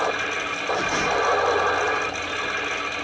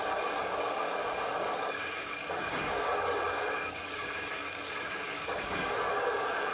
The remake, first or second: second